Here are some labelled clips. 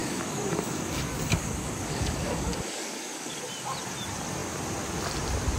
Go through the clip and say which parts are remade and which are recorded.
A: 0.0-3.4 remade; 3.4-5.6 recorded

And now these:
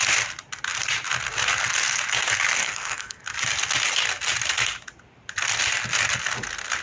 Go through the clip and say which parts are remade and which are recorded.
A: 0.0-2.6 recorded; 2.6-3.2 remade; 3.2-6.8 recorded